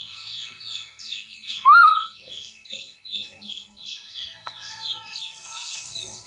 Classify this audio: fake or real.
fake